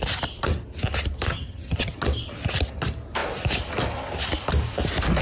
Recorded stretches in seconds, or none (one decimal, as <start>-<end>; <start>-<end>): 0.0-1.3; 1.9-5.2